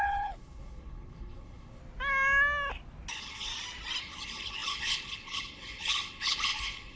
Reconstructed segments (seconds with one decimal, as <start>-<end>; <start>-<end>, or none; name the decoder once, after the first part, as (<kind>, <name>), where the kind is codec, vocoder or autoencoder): 0.0-1.8 (codec, HILCodec); 3.1-3.5; 4.0-7.0